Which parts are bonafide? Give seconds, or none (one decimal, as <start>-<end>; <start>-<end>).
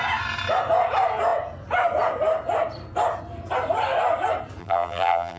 0.0-4.6